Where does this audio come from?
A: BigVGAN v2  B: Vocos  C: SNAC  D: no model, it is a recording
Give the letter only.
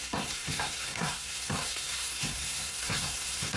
C